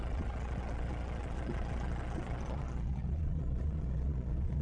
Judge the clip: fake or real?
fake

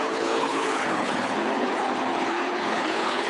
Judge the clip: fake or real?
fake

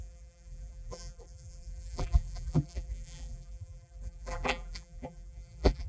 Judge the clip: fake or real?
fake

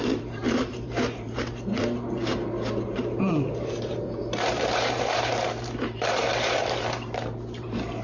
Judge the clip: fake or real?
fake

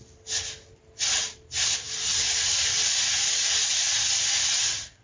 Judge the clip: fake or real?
real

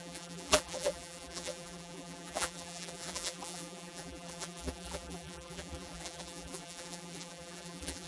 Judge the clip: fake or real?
fake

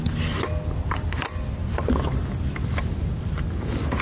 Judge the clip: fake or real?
real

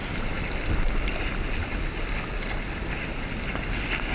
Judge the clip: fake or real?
real